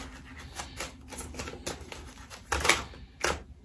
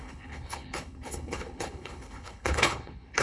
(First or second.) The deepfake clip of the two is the second